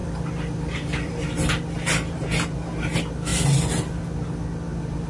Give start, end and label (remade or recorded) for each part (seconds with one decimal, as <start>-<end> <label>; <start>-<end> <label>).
0.0-1.5 remade; 1.5-3.3 recorded; 3.3-3.9 remade; 3.9-5.1 recorded